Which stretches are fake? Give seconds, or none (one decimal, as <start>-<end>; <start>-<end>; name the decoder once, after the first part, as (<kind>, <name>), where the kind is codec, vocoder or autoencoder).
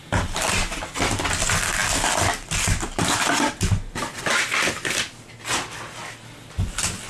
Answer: none